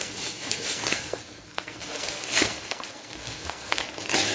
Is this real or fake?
fake